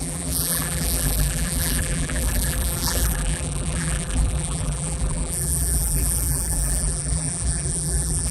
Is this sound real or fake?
fake